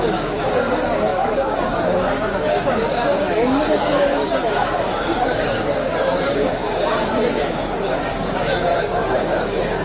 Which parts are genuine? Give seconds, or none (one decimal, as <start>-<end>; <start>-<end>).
none